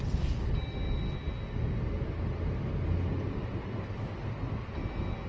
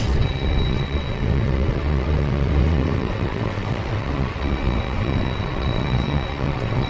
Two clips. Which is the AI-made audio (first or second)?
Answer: second